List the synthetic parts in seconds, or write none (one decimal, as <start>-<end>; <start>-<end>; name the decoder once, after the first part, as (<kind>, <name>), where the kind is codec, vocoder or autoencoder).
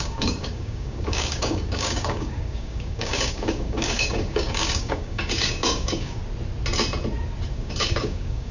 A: 0.0-6.2 (codec, DAC); 7.5-8.5